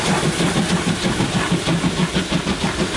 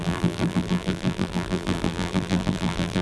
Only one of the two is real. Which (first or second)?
first